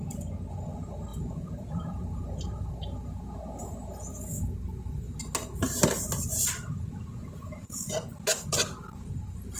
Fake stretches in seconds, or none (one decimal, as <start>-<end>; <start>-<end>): 1.1-2.7; 4.7-8.4